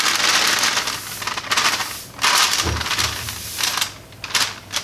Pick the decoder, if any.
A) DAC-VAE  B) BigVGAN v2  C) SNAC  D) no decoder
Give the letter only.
D